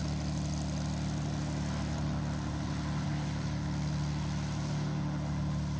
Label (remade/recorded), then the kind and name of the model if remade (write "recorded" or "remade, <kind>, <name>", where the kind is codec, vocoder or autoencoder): recorded